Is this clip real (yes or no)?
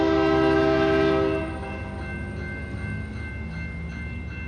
yes